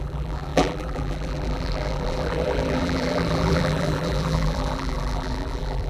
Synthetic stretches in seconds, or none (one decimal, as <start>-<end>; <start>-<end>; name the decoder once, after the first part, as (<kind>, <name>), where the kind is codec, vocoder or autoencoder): 0.0-5.9 (vocoder, BigVGAN v2)